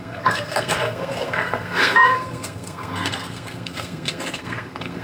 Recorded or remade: remade